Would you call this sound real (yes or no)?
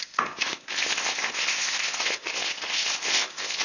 no